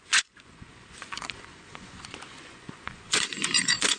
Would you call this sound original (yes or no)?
no